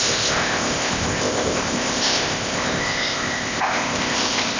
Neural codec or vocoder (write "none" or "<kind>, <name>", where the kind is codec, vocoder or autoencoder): codec, ZipCodec